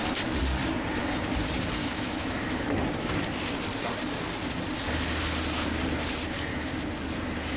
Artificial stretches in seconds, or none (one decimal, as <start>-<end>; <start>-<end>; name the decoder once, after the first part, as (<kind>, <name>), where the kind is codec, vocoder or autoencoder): 1.8-2.8 (autoencoder, DAC-VAE)